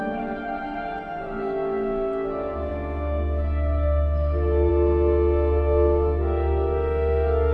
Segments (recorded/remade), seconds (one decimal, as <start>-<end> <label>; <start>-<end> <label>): 0.0-7.5 recorded